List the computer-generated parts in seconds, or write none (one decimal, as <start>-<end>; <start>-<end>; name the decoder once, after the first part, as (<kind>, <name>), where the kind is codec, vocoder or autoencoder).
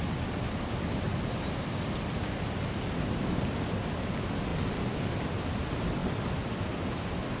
none